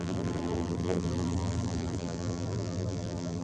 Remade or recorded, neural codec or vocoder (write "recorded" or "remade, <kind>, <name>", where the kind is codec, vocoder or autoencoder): remade, vocoder, BigVGAN v2